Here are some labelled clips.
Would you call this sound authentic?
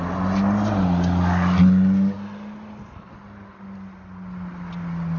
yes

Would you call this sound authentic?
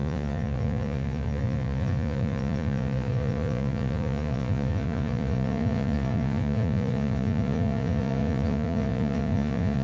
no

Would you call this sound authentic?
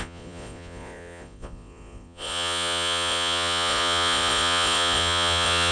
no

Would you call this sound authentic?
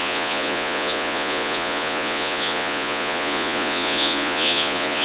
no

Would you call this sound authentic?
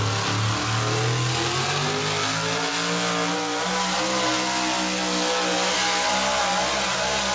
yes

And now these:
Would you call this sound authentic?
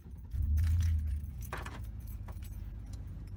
no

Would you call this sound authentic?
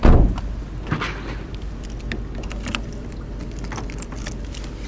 yes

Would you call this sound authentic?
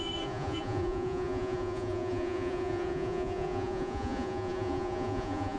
no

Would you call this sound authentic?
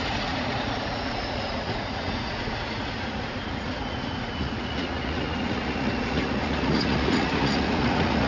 no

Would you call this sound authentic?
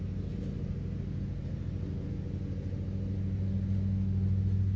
yes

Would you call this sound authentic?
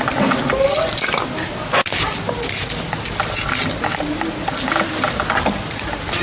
yes